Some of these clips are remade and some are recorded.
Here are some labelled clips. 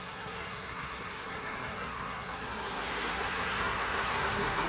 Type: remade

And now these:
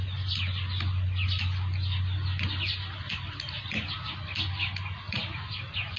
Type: recorded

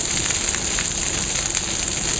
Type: recorded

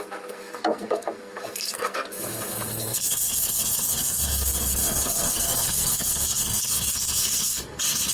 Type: remade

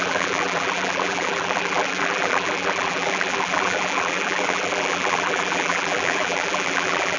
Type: remade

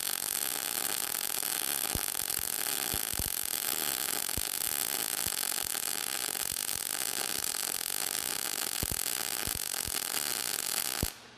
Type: recorded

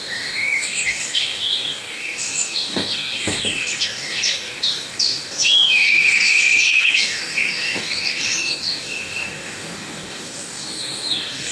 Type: remade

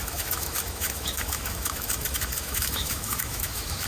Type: remade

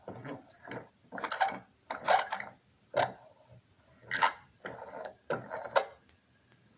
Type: recorded